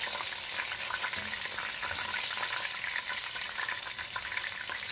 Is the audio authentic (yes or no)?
yes